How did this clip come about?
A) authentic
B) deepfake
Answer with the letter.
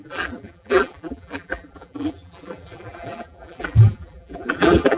B